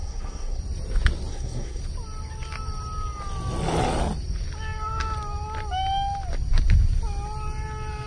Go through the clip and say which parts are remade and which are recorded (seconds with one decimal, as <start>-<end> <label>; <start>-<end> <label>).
0.0-0.6 remade; 0.6-1.3 recorded; 1.3-1.8 remade; 1.8-8.1 recorded